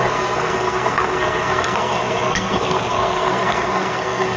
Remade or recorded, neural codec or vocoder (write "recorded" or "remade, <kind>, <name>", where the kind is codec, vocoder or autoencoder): remade, codec, SNAC